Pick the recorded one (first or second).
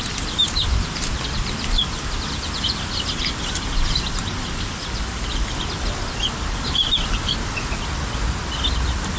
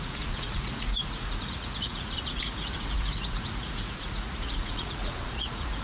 first